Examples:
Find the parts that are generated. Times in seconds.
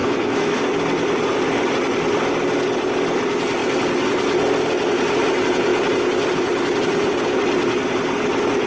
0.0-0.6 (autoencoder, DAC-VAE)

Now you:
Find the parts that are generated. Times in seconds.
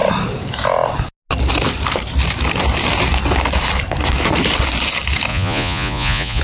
5.3-6.4 (vocoder, Vocos)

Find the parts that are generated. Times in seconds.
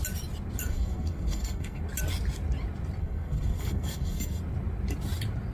0.6-1.8 (codec, SNAC); 3.0-4.4